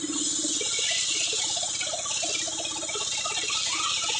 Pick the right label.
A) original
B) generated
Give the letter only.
B